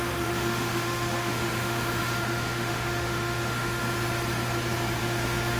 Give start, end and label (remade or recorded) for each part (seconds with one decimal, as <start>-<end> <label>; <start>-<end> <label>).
0.0-3.8 remade; 3.8-5.0 recorded; 5.0-5.6 remade